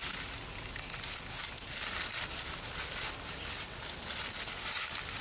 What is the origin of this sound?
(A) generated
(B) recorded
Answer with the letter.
B